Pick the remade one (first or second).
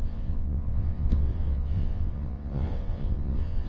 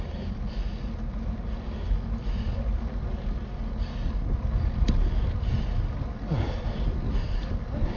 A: first